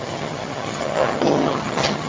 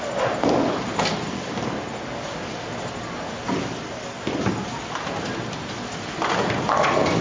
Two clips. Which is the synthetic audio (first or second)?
first